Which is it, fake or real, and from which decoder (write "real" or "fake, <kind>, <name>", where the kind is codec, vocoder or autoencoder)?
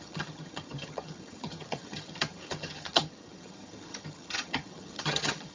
fake, vocoder, HiFi-GAN